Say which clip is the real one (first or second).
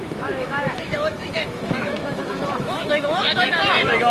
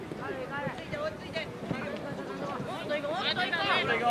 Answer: second